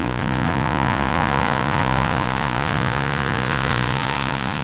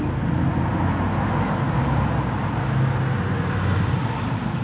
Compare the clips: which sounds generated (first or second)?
first